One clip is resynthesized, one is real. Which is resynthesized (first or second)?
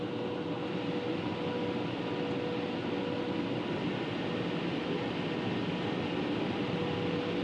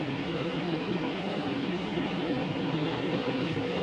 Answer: second